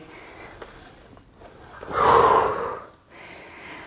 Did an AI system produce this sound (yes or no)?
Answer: no